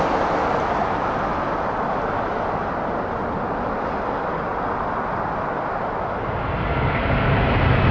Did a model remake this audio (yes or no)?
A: no